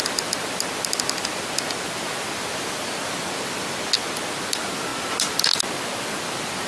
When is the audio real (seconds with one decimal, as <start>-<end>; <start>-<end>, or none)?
0.0-6.7